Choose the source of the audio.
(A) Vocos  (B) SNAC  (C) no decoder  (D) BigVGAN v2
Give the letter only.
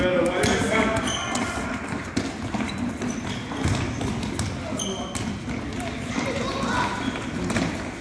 C